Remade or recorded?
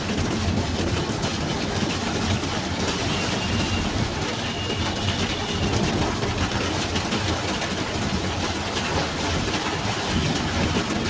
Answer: recorded